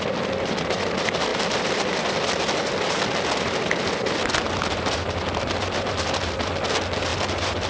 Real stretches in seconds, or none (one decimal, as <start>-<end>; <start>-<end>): 0.0-7.1